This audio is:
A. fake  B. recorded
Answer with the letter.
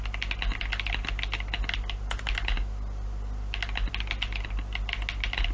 B